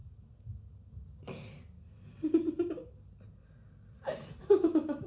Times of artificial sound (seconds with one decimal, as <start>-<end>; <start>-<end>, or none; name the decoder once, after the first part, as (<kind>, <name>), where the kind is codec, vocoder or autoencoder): 4.4-5.1 (autoencoder, DAC-VAE)